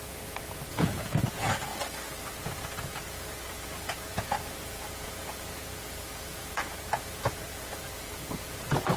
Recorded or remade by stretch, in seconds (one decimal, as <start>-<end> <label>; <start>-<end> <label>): 0.0-1.7 remade; 1.7-2.3 recorded; 2.3-9.0 remade